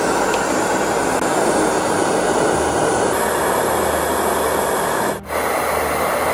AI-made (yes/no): no